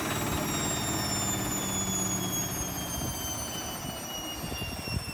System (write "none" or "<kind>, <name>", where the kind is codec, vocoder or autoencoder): none